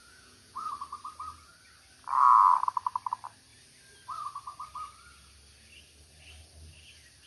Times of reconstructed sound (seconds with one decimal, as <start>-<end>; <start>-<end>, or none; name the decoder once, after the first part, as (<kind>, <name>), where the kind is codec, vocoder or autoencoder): 0.0-0.7 (vocoder, Vocos)